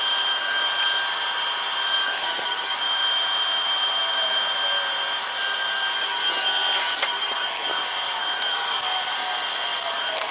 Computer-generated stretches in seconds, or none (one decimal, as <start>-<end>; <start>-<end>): 9.7-10.3